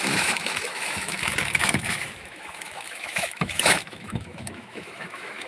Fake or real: fake